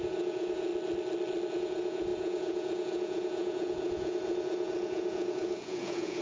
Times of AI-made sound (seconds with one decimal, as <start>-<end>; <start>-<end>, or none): 0.0-0.7; 1.5-6.2